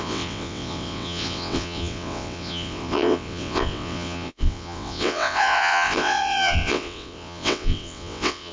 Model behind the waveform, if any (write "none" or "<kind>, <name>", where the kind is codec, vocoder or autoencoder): vocoder, WaveNeXt